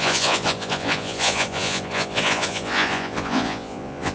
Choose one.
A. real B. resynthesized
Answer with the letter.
B